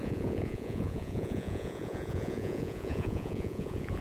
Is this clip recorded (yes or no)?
no